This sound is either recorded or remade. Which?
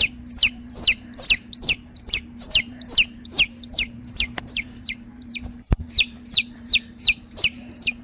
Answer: remade